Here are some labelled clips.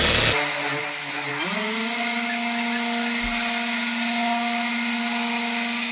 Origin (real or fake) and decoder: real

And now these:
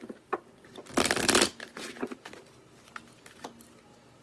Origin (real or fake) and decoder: real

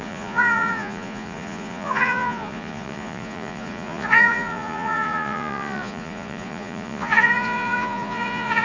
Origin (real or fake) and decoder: fake, vocoder, Vocos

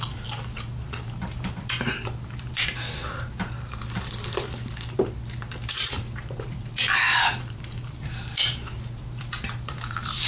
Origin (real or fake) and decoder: fake, vocoder, BigVGAN v2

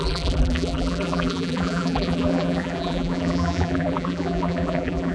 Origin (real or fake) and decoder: fake, vocoder, BigVGAN v2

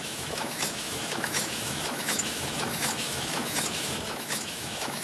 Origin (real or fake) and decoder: fake, autoencoder, DAC-VAE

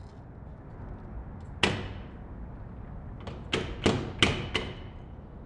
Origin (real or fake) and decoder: real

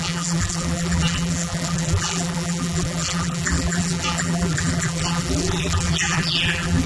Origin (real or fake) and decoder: fake, vocoder, BigVGAN v2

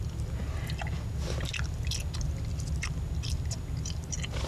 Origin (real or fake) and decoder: real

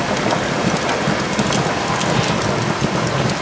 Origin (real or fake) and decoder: real